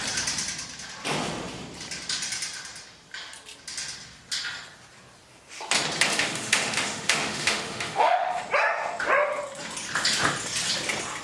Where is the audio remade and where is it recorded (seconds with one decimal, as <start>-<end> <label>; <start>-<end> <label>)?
0.0-6.1 recorded; 6.1-8.4 remade; 8.4-11.2 recorded